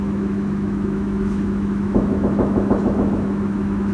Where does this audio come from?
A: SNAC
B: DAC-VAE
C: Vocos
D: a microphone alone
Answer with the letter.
B